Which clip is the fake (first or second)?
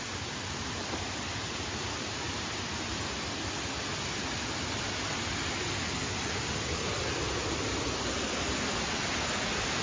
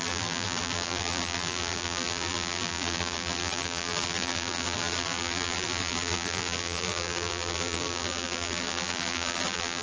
second